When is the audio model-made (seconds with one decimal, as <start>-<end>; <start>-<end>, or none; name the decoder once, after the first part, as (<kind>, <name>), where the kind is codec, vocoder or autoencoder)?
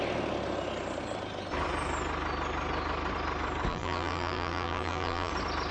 3.7-5.3 (vocoder, BigVGAN v2)